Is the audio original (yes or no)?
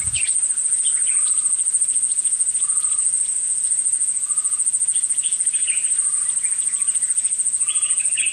no